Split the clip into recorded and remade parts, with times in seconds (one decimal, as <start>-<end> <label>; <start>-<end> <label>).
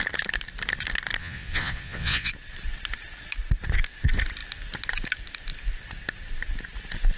0.0-1.2 recorded; 1.2-2.3 remade; 2.3-7.2 recorded